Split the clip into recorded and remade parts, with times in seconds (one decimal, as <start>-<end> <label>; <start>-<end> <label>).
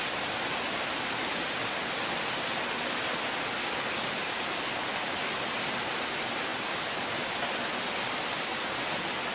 0.0-9.3 recorded